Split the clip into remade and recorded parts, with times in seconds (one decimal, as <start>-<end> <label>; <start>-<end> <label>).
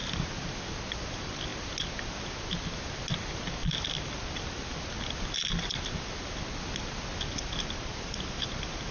0.0-7.3 recorded; 7.3-8.9 remade